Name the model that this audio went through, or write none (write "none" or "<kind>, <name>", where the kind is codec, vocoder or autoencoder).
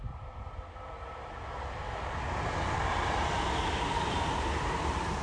none